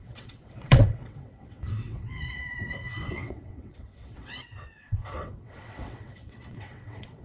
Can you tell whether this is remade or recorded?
remade